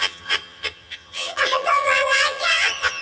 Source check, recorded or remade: remade